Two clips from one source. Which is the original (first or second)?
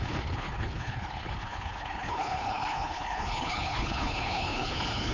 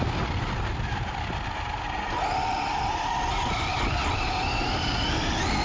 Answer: second